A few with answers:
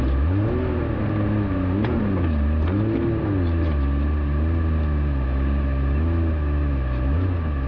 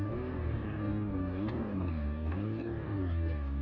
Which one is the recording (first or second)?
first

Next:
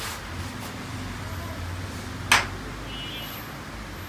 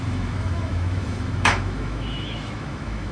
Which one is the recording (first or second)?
first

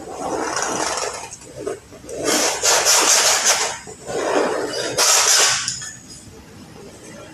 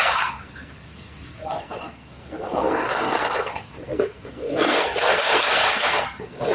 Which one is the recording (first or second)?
first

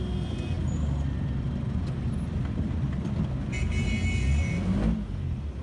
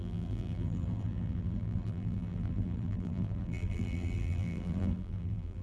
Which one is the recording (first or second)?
first